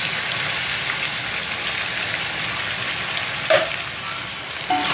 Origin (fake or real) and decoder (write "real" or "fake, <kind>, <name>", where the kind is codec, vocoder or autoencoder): real